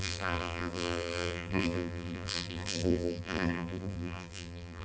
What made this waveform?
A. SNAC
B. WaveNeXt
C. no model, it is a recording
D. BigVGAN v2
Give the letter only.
D